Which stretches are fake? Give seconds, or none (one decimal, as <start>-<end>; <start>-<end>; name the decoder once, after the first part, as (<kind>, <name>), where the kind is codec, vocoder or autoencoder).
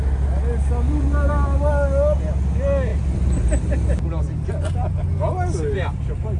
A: none